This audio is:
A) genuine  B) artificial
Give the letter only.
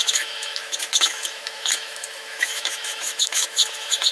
B